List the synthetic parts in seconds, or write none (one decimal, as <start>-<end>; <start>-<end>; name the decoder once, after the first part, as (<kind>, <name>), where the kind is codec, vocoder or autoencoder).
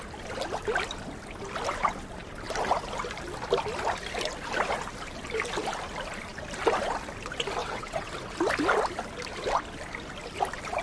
7.6-8.1 (vocoder, WaveNeXt)